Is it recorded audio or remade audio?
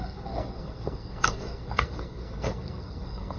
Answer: remade